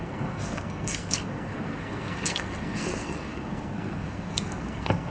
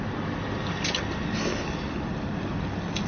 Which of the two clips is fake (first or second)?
first